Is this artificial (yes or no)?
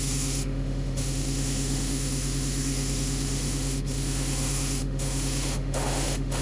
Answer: yes